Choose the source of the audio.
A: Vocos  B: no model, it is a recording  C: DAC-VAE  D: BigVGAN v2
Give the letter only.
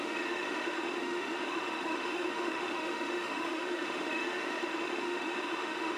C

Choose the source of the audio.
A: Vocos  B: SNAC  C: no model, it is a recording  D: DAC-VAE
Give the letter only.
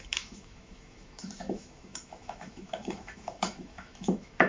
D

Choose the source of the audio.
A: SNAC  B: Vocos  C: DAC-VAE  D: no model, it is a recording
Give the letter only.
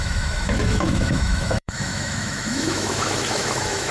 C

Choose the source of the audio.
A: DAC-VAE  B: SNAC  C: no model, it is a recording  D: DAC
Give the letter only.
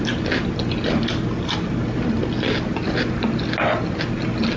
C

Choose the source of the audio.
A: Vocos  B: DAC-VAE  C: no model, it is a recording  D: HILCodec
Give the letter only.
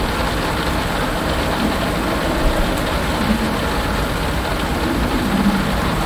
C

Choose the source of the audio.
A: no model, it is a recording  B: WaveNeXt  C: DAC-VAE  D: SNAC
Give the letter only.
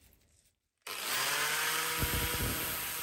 A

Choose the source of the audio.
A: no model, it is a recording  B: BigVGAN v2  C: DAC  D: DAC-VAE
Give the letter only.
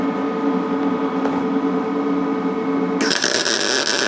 A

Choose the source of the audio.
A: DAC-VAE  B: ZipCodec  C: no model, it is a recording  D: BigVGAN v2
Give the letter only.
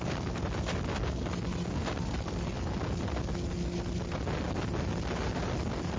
C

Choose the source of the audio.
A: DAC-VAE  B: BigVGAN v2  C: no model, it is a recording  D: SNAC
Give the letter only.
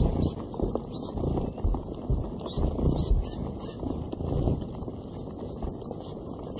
C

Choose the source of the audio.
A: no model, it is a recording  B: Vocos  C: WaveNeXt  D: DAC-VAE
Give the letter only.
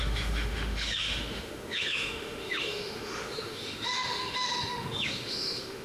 D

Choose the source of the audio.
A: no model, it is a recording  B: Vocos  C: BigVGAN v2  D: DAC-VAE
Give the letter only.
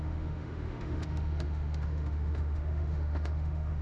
D